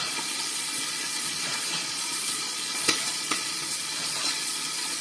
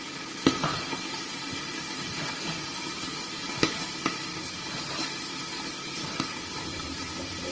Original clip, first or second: second